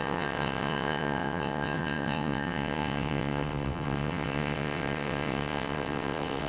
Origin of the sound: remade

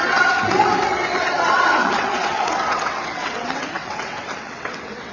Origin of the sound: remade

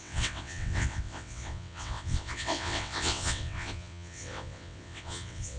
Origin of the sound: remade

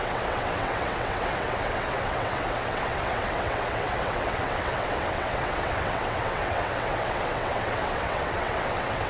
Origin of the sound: remade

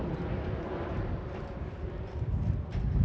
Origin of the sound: recorded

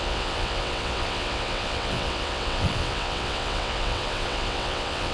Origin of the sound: remade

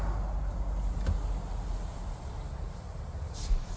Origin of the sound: recorded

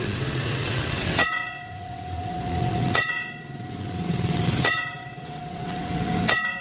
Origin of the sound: remade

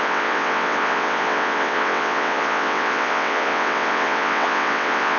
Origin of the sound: remade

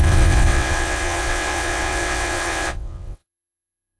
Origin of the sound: remade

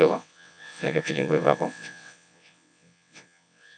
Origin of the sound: remade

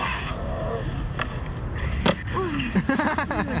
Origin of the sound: recorded